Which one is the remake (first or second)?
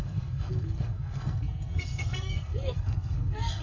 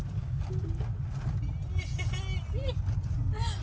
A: first